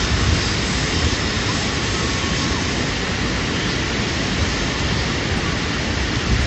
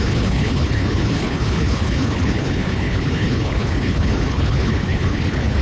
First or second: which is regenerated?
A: second